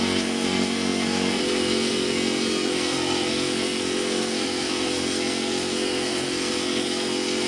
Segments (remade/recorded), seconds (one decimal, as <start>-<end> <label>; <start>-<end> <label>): 0.0-7.5 remade

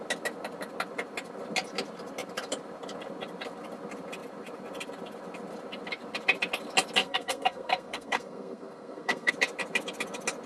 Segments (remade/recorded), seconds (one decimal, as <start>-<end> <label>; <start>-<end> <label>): 0.0-7.0 recorded; 7.0-9.3 remade; 9.3-10.5 recorded